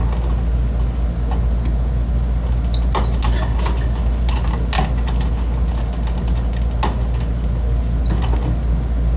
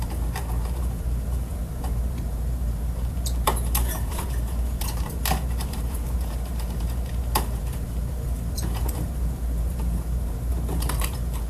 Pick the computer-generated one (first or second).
second